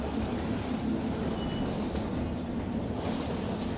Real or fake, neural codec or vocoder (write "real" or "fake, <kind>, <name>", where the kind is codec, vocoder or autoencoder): real